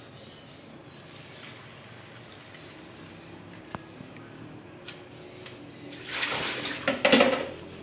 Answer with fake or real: real